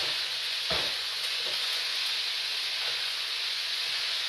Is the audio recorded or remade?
remade